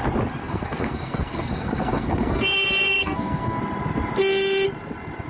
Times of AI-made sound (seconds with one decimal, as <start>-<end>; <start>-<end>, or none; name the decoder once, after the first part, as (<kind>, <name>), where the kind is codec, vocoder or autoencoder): 0.4-3.6 (codec, SNAC)